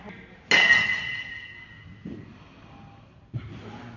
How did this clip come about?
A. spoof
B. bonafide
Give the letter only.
B